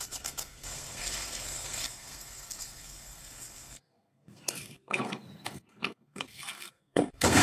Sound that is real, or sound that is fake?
fake